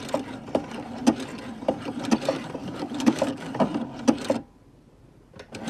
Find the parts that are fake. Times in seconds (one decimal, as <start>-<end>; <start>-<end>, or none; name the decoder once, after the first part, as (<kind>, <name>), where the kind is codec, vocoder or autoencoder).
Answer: 2.6-3.5 (codec, DAC)